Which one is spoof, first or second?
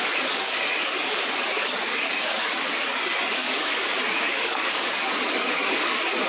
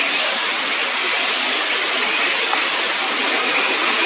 first